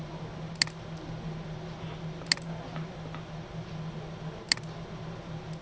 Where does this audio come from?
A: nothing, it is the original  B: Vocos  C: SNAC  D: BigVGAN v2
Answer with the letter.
A